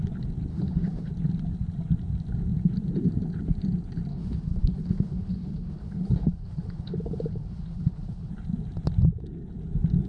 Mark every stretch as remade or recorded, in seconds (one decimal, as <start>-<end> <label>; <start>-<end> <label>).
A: 0.0-0.5 recorded; 0.5-1.1 remade; 1.1-4.1 recorded; 4.1-8.3 remade; 8.3-10.1 recorded